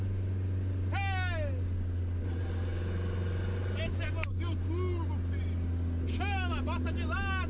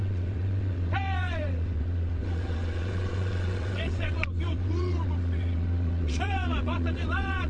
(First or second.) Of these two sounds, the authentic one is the first